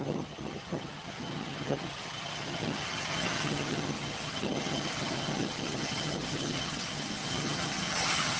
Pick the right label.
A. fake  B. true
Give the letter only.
A